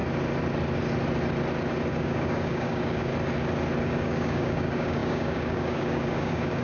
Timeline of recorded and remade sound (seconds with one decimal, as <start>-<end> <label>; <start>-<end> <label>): 0.0-1.9 recorded; 1.9-3.1 remade; 3.1-3.8 recorded; 3.8-6.6 remade